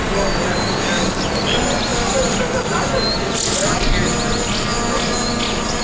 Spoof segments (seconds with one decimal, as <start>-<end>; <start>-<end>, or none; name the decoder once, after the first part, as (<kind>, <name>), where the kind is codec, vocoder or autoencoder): none

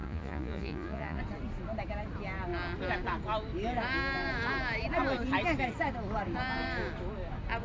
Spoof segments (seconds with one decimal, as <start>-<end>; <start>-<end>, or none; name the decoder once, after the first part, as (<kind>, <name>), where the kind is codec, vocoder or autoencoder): 0.0-1.2 (vocoder, Vocos)